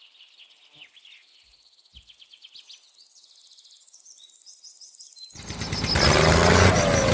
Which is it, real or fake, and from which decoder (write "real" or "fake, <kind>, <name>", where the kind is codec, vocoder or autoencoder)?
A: real